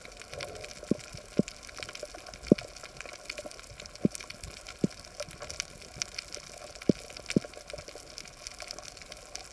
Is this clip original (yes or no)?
yes